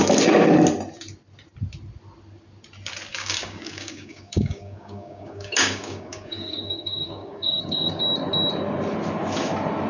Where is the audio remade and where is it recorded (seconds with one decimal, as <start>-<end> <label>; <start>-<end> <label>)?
0.0-3.1 recorded; 3.1-8.0 remade; 8.0-9.9 recorded